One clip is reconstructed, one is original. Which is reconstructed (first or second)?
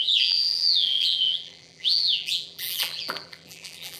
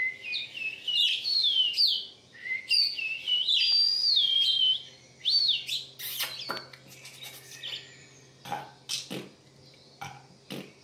first